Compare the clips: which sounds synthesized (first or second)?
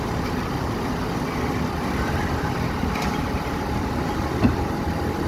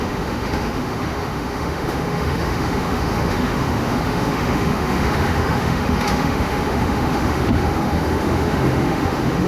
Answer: second